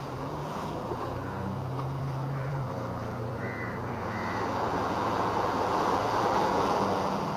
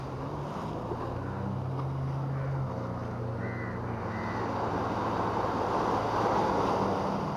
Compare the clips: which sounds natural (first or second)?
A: second